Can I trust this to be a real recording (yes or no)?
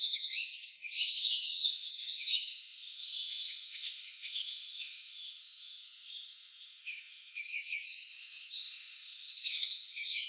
no